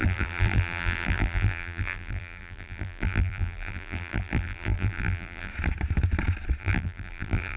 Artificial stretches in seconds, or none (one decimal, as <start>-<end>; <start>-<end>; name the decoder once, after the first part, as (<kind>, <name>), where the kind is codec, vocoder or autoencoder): 0.0-5.5 (vocoder, BigVGAN v2); 6.6-7.6